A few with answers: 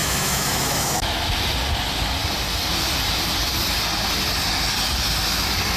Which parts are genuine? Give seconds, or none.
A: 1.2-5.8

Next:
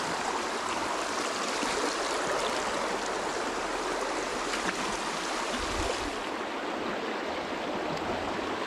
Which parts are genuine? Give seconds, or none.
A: 0.0-8.7

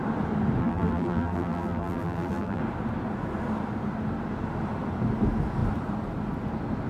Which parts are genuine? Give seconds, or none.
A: 0.0-0.6; 2.6-6.9

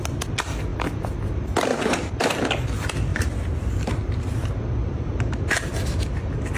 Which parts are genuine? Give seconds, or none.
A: 0.0-1.7; 2.4-3.1; 4.5-6.6